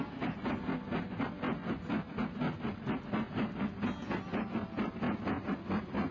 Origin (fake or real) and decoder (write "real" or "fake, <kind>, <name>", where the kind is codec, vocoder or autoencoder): real